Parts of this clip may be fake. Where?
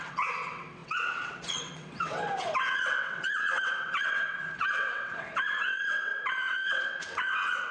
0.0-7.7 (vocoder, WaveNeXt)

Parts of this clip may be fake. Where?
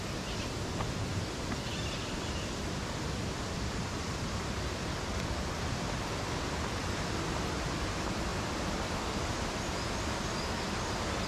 none